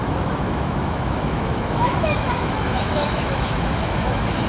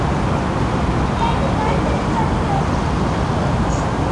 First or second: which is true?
second